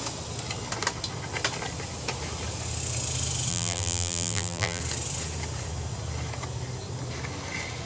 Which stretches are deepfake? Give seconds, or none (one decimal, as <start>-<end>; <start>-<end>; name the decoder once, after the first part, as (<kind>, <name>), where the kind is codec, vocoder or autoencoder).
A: 3.5-4.8 (vocoder, BigVGAN v2)